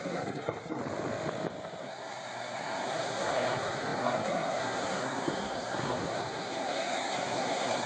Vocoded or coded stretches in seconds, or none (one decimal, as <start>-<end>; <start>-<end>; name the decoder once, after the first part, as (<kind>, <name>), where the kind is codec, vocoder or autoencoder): 0.0-0.8 (codec, SNAC); 1.8-7.9

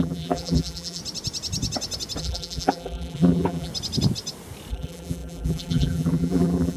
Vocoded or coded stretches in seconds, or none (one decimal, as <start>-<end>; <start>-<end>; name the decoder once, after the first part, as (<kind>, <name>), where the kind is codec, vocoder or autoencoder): 0.0-1.0 (vocoder, BigVGAN v2); 2.2-3.7; 4.7-6.8

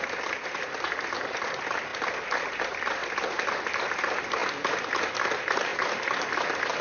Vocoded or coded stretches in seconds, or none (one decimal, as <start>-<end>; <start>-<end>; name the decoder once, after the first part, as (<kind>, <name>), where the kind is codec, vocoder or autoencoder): none

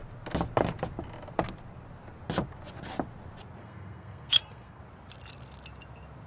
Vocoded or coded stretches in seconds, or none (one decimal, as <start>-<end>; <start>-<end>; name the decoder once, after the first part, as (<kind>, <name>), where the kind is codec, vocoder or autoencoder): 3.6-4.8 (codec, SNAC)